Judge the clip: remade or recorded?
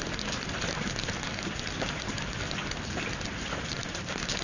recorded